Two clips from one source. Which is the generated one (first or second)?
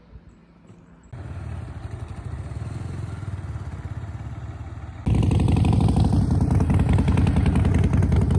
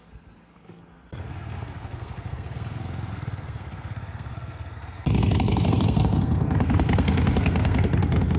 second